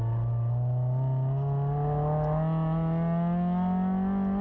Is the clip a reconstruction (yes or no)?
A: no